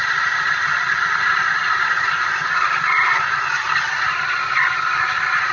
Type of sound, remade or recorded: recorded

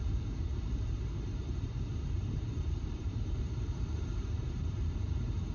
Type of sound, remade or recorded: remade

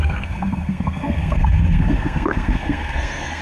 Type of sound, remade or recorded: remade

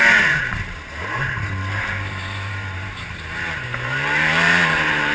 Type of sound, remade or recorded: remade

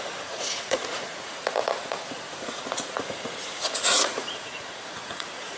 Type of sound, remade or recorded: remade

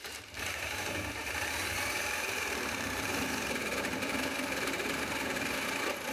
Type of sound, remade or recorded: remade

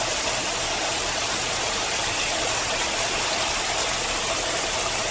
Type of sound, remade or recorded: recorded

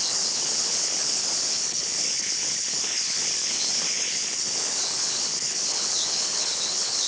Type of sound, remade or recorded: remade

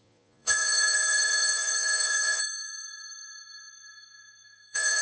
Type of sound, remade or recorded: remade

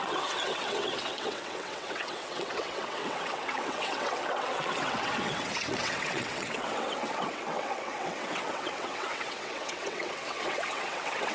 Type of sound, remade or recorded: remade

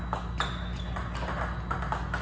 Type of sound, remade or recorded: recorded